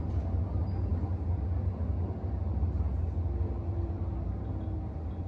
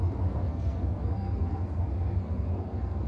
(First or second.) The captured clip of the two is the first